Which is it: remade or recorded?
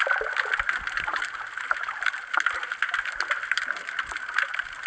recorded